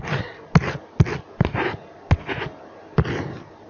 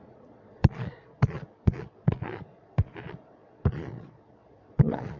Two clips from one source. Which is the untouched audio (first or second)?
first